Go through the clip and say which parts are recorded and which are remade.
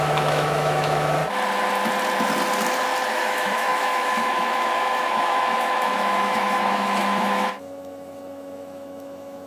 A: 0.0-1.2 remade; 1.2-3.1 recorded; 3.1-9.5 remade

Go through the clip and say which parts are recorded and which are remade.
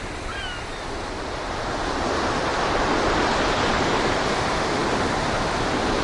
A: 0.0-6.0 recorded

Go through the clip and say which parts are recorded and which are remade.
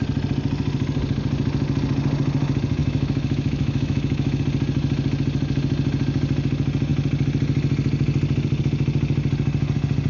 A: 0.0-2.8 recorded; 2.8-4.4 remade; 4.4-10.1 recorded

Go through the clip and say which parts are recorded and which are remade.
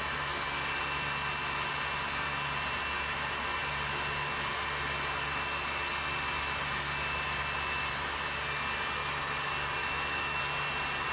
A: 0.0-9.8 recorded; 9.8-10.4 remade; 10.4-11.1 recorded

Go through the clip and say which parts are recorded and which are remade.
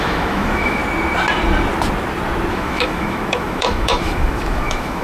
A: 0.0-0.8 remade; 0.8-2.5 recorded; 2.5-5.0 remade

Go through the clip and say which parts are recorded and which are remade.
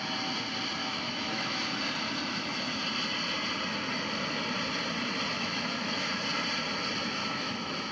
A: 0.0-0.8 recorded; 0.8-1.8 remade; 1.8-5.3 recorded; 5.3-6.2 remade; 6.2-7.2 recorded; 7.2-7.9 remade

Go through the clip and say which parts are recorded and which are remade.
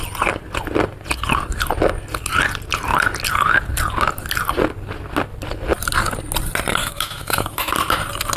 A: 0.0-6.8 recorded; 6.8-7.7 remade; 7.7-8.4 recorded